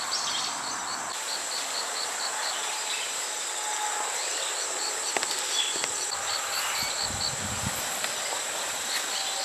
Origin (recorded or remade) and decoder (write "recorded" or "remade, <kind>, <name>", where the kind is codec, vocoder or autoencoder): recorded